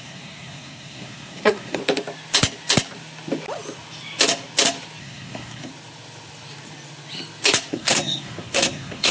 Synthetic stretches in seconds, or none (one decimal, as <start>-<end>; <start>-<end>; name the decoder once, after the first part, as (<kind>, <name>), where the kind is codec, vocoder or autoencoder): 0.0-1.8 (codec, SNAC); 5.0-5.7; 7.7-9.1